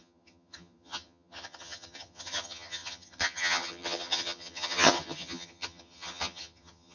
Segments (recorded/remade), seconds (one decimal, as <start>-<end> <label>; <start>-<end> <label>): 0.0-6.9 remade